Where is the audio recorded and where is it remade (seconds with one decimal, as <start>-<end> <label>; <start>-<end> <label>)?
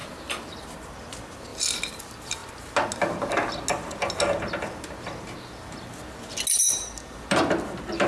0.0-0.9 remade; 0.9-1.5 recorded; 1.5-2.0 remade; 2.0-8.1 recorded